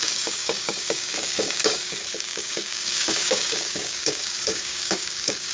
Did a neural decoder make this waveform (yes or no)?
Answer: yes